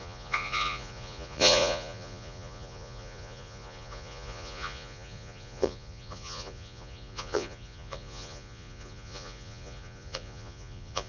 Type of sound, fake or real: fake